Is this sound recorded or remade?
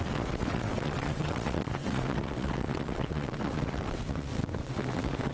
remade